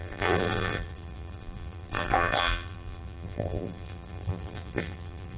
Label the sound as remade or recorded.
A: remade